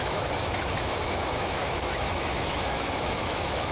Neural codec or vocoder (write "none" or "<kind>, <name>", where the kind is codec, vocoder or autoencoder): autoencoder, DAC-VAE